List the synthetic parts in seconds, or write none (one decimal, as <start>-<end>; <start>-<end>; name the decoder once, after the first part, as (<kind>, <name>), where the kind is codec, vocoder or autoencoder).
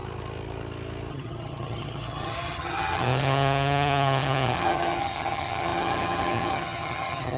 1.1-7.4 (vocoder, HiFi-GAN)